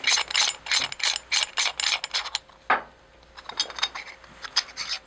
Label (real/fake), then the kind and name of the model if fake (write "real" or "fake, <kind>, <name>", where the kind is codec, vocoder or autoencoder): real